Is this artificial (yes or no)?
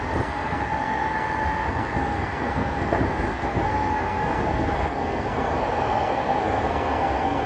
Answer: yes